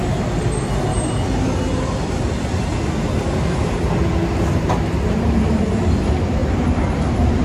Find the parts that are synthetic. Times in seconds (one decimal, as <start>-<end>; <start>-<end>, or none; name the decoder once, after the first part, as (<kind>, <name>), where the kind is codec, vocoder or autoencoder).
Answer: 6.4-7.4 (vocoder, BigVGAN v2)